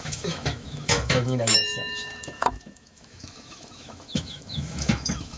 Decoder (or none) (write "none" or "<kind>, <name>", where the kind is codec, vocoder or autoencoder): autoencoder, DAC-VAE